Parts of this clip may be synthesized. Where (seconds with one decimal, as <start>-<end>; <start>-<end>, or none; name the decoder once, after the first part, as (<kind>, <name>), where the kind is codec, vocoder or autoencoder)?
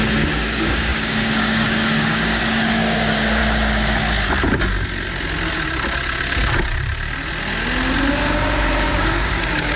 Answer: 0.0-3.4 (codec, DAC); 8.1-9.8